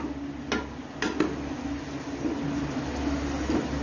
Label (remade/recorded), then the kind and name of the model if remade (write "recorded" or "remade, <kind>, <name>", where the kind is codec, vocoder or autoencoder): recorded